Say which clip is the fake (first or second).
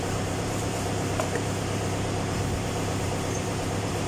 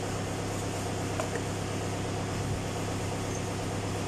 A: first